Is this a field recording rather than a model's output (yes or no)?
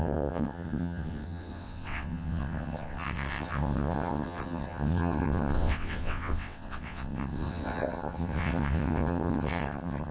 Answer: no